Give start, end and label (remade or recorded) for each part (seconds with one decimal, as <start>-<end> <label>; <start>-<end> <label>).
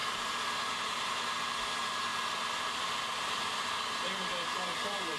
0.0-0.7 remade; 0.7-2.1 recorded; 2.1-3.8 remade; 3.8-5.2 recorded